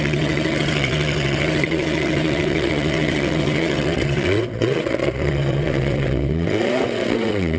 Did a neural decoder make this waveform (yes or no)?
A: yes